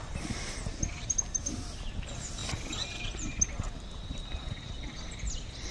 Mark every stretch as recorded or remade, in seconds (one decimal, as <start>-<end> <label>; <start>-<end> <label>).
0.0-5.7 recorded